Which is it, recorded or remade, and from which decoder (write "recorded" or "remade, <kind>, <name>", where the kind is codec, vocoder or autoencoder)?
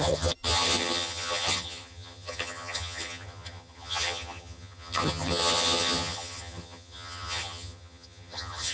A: remade, vocoder, HiFi-GAN